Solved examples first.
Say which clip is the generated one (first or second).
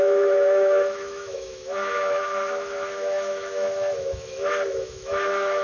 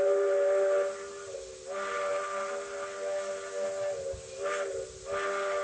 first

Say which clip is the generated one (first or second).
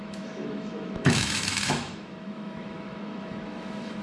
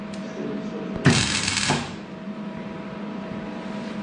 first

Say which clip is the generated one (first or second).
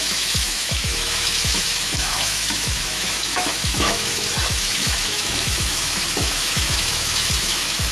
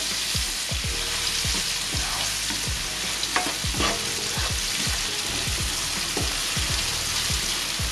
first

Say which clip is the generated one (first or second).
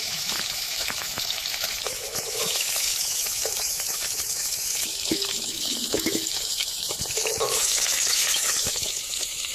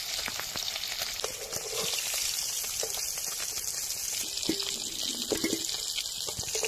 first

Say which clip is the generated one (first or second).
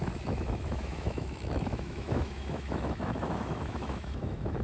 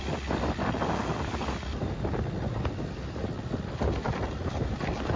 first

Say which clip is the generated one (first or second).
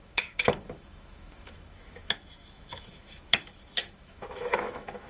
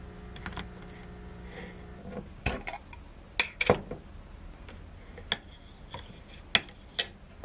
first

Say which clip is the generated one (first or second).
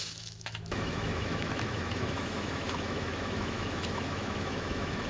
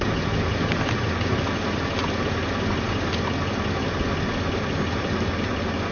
first